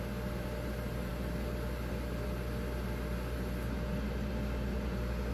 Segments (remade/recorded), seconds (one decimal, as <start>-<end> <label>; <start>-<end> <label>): 0.0-5.3 recorded